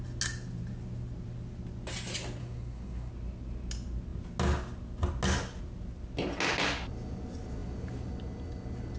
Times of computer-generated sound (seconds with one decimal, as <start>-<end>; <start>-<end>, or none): 2.4-3.1